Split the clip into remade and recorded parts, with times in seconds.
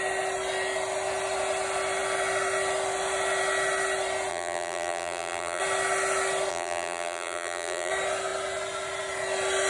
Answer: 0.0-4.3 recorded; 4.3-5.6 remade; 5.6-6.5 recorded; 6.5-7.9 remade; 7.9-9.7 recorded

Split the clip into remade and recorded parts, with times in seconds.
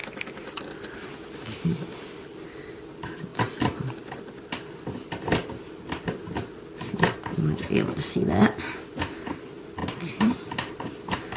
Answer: 0.0-1.4 remade; 1.4-9.8 recorded; 9.8-11.4 remade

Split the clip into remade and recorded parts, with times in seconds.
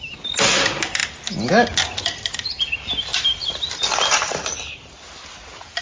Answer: 0.0-5.8 recorded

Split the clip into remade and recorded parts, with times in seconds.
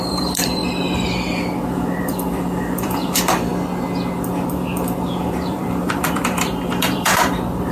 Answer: 0.0-0.6 remade; 0.6-2.0 recorded; 2.0-3.5 remade; 3.5-5.2 recorded; 5.2-7.7 remade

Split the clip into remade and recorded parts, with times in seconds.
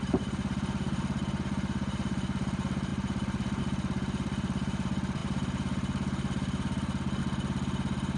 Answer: 0.0-2.9 remade; 2.9-3.6 recorded; 3.6-8.2 remade